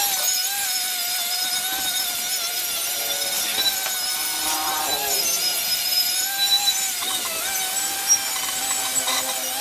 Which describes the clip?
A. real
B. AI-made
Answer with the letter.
A